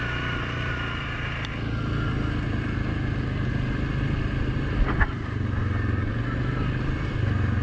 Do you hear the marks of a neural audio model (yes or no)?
no